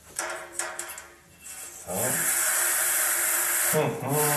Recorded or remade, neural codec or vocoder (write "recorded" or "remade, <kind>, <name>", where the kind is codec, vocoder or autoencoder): remade, vocoder, BigVGAN v2